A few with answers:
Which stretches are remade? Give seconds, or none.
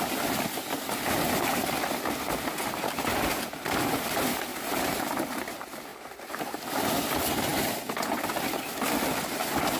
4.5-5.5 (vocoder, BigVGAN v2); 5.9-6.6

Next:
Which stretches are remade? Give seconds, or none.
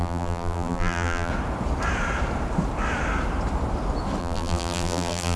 0.0-1.3 (vocoder, BigVGAN v2); 4.2-5.4